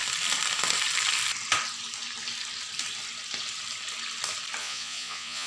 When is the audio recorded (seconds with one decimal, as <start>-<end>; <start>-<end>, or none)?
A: 0.0-4.6